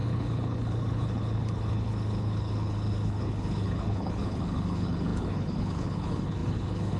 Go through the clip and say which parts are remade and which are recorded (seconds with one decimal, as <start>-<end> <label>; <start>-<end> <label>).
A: 0.0-7.0 remade